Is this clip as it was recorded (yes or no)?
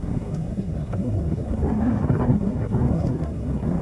no